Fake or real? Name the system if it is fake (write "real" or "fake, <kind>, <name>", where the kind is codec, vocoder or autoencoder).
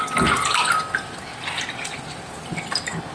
real